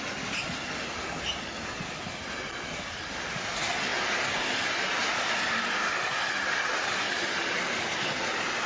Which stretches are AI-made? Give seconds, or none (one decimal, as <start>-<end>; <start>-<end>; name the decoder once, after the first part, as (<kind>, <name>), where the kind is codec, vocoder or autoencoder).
none